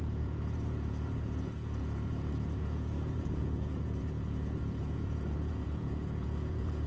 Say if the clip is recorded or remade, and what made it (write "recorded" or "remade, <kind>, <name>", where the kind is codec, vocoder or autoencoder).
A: remade, vocoder, Vocos